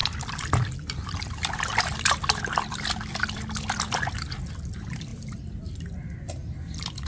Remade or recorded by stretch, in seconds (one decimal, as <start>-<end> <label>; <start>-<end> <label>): 0.0-4.3 remade; 4.3-5.1 recorded; 5.1-7.1 remade